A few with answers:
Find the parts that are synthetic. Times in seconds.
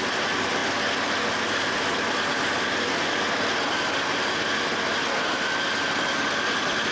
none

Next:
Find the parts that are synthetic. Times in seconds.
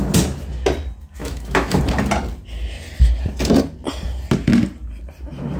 1.2-1.8 (autoencoder, DAC-VAE)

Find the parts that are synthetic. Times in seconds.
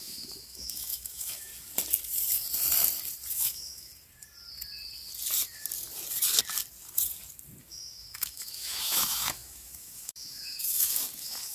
0.0-1.5 (autoencoder, DAC-VAE); 3.3-3.9; 7.6-11.5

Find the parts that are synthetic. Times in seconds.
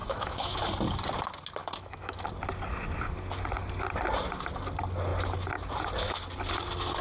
0.0-0.6 (autoencoder, DAC-VAE); 1.6-2.3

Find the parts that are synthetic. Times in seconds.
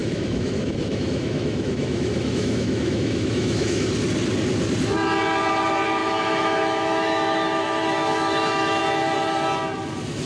0.0-3.9 (autoencoder, DAC-VAE); 6.0-8.8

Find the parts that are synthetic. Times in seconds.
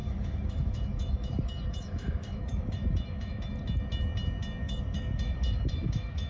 0.0-3.4 (autoencoder, DAC-VAE); 4.6-6.3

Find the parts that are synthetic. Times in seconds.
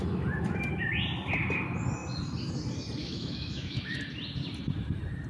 3.0-4.0 (autoencoder, DAC-VAE)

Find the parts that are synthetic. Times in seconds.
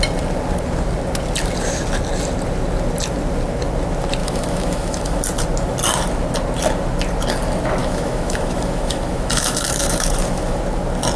4.2-5.2 (autoencoder, DAC-VAE); 7.8-10.6